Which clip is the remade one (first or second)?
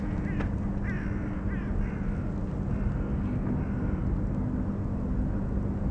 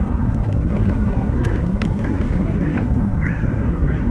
second